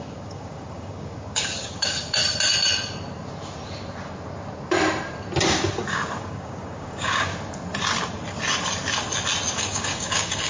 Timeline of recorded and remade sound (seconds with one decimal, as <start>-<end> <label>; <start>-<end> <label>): 0.0-2.2 remade; 2.2-6.2 recorded; 6.2-7.3 remade; 7.3-9.6 recorded; 9.6-10.5 remade